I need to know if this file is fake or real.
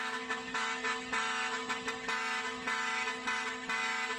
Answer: fake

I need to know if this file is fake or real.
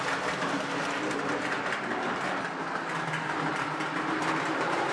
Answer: real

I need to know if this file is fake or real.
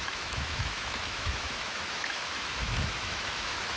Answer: fake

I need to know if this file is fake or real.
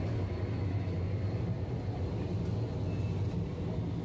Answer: real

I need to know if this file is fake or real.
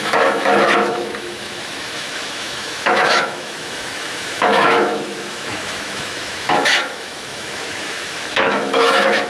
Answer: fake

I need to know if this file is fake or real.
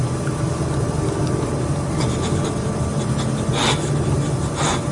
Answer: real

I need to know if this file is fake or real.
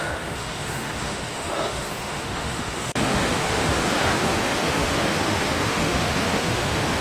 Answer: fake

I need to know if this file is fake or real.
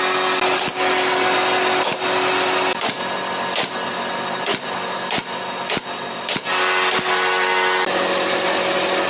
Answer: real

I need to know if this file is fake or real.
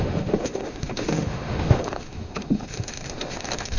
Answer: fake